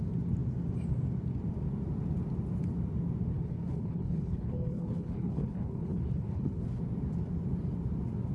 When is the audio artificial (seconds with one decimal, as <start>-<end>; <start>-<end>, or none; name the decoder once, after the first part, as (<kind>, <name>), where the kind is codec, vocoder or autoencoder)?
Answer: 3.3-6.8 (codec, HILCodec)